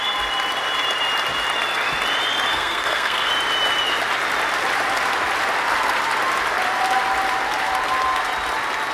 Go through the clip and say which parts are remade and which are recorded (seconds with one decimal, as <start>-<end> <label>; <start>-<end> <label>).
0.0-2.5 recorded; 2.5-3.3 remade; 3.3-8.9 recorded